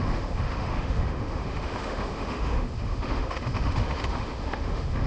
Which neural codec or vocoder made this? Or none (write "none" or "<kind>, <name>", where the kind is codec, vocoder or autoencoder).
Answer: autoencoder, DAC-VAE